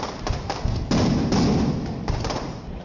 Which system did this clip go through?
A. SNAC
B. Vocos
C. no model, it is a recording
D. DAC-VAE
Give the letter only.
C